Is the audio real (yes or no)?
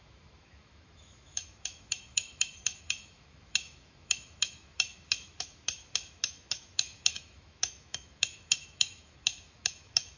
no